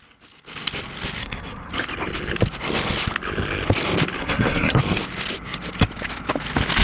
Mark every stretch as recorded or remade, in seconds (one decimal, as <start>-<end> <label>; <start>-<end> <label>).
0.0-1.2 recorded; 1.2-1.7 remade; 1.7-4.2 recorded; 4.2-4.8 remade; 4.8-6.8 recorded